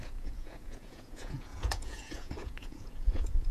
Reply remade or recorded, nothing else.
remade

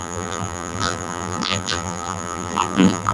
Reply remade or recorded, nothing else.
remade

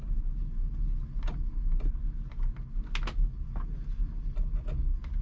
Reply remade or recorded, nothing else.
recorded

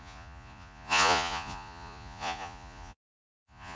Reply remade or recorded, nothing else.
remade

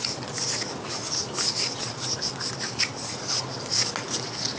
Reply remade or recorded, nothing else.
recorded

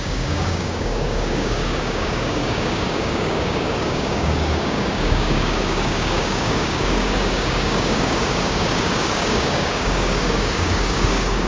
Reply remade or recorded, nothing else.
remade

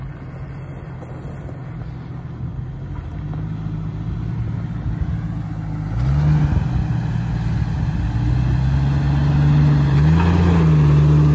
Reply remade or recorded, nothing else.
recorded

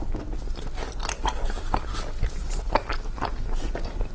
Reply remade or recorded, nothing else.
recorded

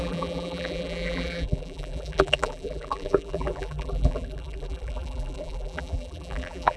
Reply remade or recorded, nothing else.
remade